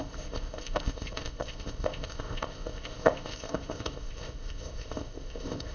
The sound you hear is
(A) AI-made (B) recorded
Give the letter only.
A